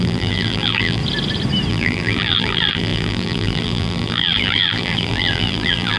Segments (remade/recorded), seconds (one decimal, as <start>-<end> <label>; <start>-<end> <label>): 0.0-1.0 remade; 1.0-1.7 recorded; 1.7-6.0 remade